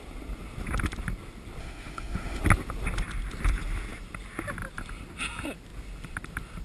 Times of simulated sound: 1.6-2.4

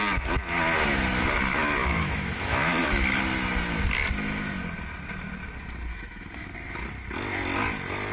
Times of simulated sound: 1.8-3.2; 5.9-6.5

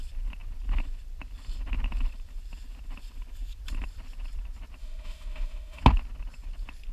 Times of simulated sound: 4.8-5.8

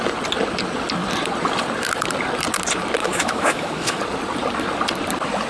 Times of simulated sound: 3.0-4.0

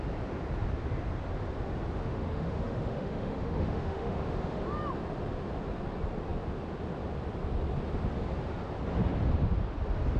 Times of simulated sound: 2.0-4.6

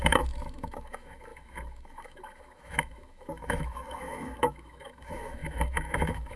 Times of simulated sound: 0.0-6.4